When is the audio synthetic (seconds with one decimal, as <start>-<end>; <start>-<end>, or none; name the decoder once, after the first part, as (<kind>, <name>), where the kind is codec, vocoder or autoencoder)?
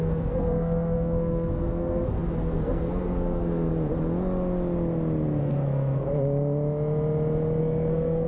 0.0-3.7 (codec, SNAC); 5.4-6.1; 7.6-8.3